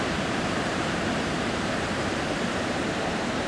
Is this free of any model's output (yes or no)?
no